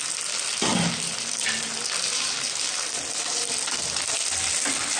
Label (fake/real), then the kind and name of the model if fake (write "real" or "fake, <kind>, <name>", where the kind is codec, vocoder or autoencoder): real